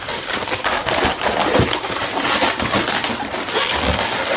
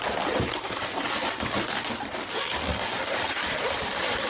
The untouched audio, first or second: first